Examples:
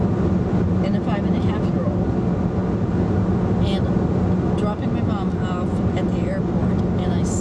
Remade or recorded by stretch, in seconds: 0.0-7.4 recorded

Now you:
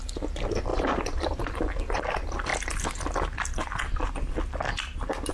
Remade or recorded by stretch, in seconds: 0.0-0.7 recorded; 0.7-2.0 remade; 2.0-5.3 recorded

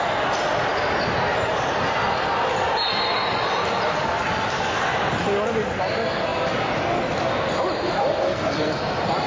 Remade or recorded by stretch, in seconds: 0.0-8.0 recorded; 8.0-8.7 remade; 8.7-9.3 recorded

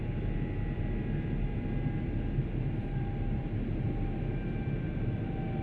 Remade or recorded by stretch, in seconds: 0.0-2.8 recorded; 2.8-3.4 remade; 3.4-5.6 recorded

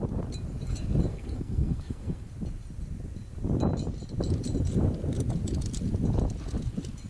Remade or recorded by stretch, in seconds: 0.0-1.1 recorded; 1.1-2.3 remade; 2.3-7.1 recorded

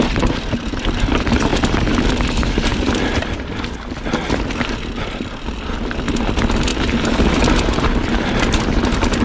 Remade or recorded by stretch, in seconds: 0.0-2.7 recorded; 2.7-4.8 remade; 4.8-6.7 recorded; 6.7-9.2 remade

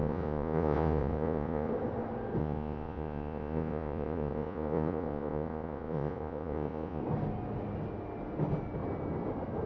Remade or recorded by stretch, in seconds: 0.0-1.7 remade; 1.7-2.4 recorded; 2.4-7.0 remade; 7.0-9.7 recorded

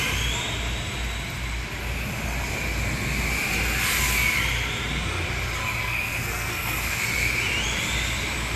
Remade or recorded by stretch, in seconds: 0.0-5.8 recorded; 5.8-7.0 remade; 7.0-8.6 recorded